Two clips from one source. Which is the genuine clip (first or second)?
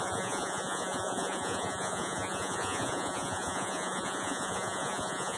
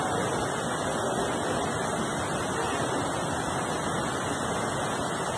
second